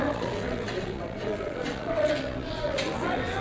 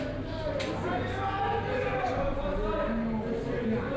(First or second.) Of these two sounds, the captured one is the second